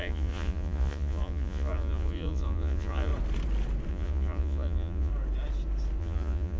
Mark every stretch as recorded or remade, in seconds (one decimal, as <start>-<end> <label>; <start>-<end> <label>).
0.0-3.1 remade; 3.1-3.9 recorded; 3.9-5.1 remade; 5.1-6.0 recorded; 6.0-6.6 remade